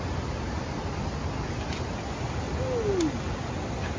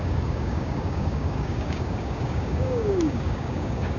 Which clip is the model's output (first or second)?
second